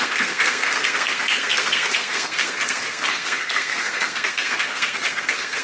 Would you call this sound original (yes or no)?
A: no